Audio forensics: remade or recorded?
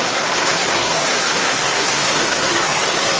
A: remade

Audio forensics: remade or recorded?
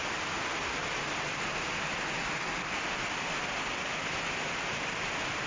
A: recorded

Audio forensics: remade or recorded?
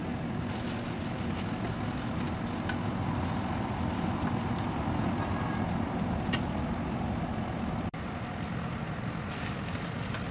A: recorded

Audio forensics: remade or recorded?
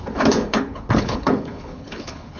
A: remade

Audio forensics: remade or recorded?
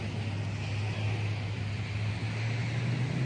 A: recorded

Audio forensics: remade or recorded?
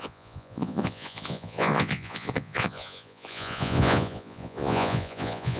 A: remade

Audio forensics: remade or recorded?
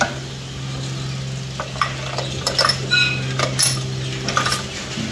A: recorded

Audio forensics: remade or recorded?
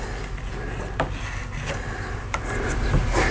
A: recorded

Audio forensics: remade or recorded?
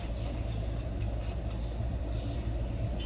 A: recorded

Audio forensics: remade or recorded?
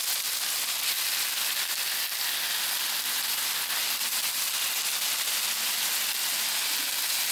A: recorded